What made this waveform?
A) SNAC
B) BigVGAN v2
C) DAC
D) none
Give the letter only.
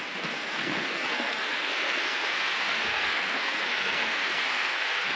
A